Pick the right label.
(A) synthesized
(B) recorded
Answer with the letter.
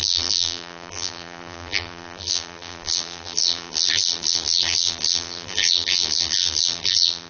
A